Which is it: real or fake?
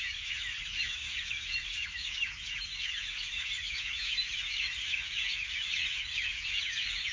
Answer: fake